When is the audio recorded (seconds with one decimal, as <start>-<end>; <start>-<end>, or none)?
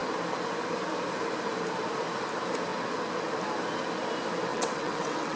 0.0-4.5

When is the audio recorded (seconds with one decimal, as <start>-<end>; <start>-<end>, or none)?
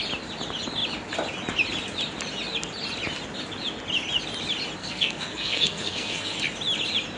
0.0-4.8; 6.4-7.2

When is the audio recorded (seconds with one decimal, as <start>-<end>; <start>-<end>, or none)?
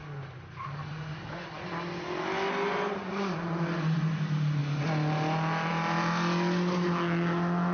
0.0-7.7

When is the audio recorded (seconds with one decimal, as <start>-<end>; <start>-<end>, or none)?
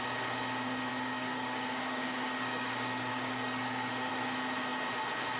0.0-0.9; 4.1-5.4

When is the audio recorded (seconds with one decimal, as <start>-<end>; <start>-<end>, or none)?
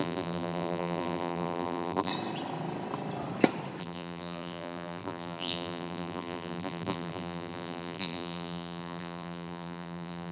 2.1-3.8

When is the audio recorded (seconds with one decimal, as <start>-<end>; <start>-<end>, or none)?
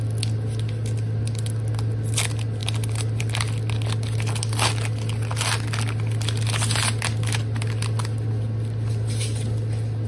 0.0-10.1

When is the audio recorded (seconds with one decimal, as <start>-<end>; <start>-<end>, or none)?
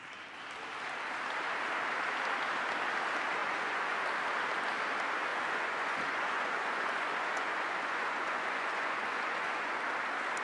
0.0-3.4; 4.0-5.3; 9.8-10.4